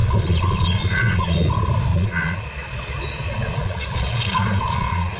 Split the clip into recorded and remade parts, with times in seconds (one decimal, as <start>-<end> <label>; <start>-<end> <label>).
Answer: 0.0-1.5 remade; 1.5-1.9 recorded; 1.9-5.2 remade